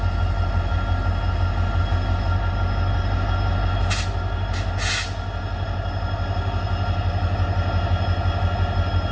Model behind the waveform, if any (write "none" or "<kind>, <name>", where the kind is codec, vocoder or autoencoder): none